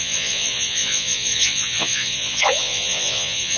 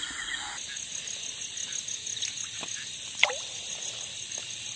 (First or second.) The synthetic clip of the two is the first